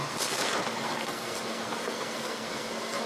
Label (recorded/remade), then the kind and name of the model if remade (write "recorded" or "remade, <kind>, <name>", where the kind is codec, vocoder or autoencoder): remade, codec, SNAC